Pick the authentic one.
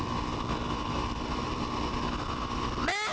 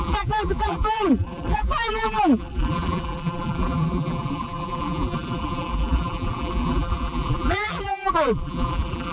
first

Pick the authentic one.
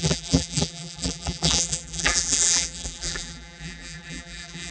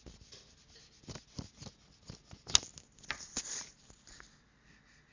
second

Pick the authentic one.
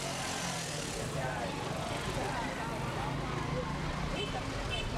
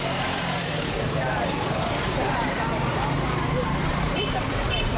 first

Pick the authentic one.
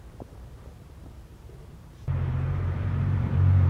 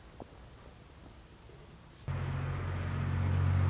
second